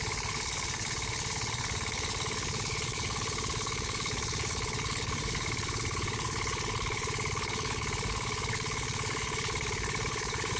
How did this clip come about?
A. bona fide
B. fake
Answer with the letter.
B